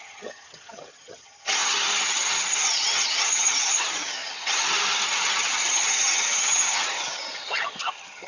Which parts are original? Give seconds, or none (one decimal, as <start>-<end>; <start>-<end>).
none